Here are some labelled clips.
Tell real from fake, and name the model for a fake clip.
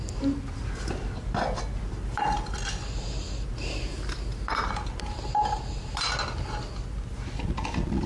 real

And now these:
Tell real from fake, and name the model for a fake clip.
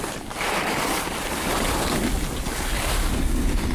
real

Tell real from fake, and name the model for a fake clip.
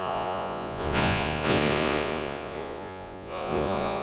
fake, vocoder, Vocos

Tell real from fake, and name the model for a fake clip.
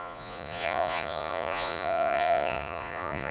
fake, vocoder, Vocos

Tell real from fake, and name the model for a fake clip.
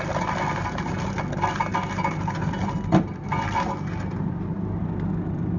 real